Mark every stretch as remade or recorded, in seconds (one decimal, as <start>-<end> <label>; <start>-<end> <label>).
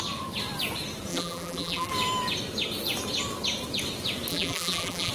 0.0-1.1 recorded; 1.1-1.9 remade; 1.9-4.3 recorded; 4.3-5.1 remade